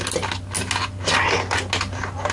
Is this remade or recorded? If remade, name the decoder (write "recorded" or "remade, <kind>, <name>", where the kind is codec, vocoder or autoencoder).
recorded